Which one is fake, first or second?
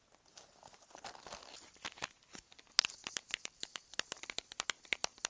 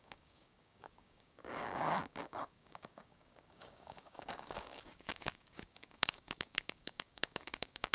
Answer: second